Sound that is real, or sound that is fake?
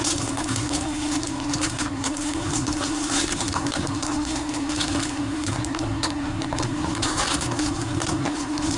fake